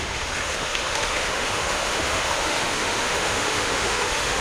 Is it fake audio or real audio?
fake